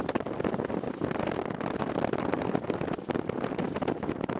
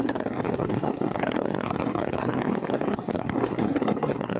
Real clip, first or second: first